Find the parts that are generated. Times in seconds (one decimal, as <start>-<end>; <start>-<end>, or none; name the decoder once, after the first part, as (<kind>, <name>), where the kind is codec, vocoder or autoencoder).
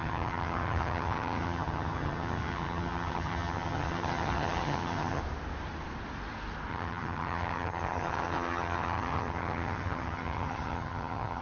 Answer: 0.0-5.2 (vocoder, HiFi-GAN); 6.7-11.4